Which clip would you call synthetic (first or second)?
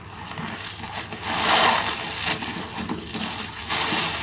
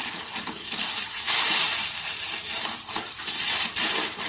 second